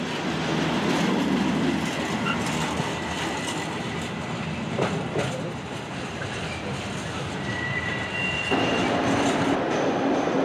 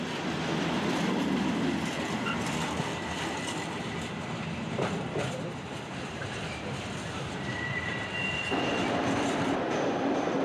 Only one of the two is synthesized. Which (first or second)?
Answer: second